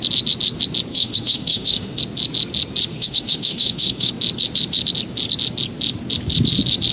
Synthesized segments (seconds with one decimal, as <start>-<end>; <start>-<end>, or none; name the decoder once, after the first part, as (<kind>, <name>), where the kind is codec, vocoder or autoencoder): 0.9-2.0 (autoencoder, DAC-VAE); 2.9-4.1